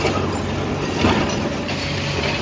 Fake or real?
real